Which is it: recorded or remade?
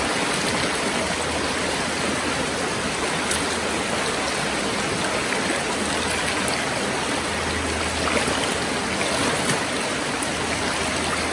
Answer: recorded